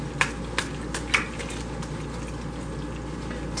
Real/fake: real